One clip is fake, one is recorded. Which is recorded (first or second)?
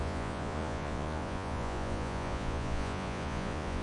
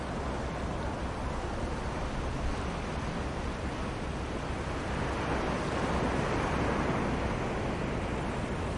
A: second